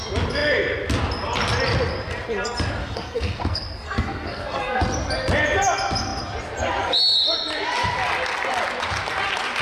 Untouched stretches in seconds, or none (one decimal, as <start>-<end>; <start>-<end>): 0.0-2.8; 4.8-9.6